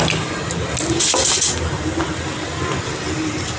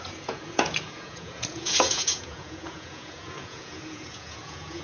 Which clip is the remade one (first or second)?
second